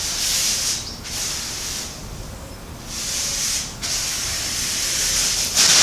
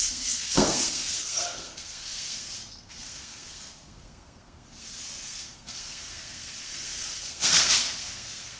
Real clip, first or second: first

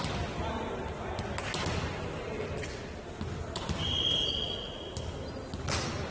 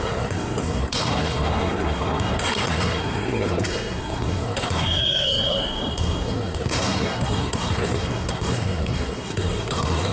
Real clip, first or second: first